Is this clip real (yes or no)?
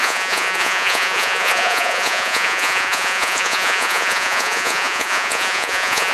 no